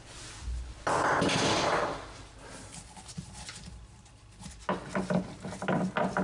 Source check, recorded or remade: recorded